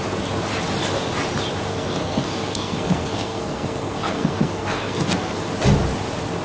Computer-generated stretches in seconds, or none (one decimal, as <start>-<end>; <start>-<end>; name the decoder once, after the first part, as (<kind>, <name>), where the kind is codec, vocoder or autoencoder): 1.7-5.5 (codec, SNAC)